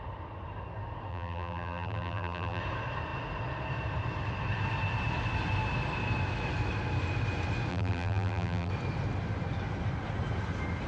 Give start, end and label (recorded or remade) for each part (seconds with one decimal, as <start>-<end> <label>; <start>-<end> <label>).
0.0-1.1 recorded; 1.1-2.6 remade; 2.6-7.7 recorded; 7.7-8.7 remade; 8.7-10.9 recorded